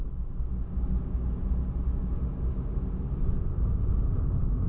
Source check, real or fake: real